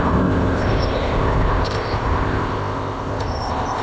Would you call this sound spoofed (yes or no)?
yes